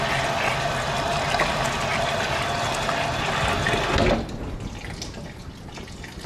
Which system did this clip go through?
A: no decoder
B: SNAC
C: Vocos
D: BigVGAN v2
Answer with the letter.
A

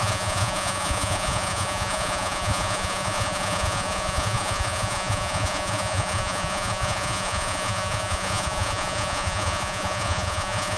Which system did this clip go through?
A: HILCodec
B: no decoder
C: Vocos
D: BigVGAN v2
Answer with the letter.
C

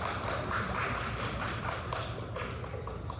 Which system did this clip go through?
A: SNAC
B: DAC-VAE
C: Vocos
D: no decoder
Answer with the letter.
D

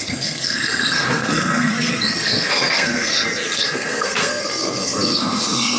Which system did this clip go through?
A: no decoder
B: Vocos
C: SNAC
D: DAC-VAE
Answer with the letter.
C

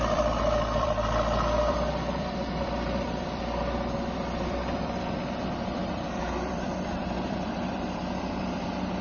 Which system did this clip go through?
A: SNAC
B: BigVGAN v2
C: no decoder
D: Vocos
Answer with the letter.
B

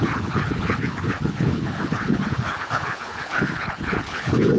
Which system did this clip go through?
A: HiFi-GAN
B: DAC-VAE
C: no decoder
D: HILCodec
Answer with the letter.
D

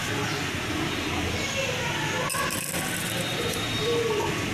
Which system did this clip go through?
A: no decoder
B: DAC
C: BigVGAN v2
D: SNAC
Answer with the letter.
A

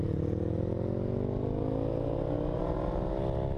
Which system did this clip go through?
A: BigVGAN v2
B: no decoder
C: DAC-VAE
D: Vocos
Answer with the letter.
B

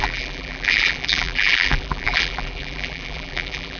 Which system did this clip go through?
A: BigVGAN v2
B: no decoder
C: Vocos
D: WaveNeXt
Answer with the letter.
A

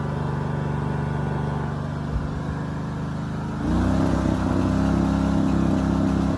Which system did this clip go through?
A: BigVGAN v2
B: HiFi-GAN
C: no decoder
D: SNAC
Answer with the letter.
C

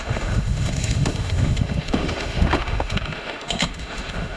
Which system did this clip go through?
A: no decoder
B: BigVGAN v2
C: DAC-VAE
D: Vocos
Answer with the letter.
C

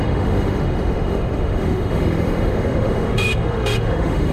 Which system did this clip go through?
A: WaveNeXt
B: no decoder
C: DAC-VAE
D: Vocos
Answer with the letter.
C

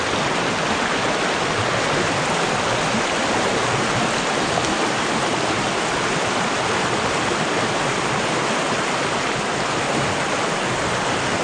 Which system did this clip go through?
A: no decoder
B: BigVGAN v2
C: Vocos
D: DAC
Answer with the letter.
A